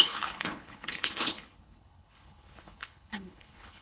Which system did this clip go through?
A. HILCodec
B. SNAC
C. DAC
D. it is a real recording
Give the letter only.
A